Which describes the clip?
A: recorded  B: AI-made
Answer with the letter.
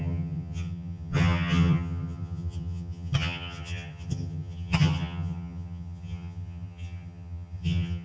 B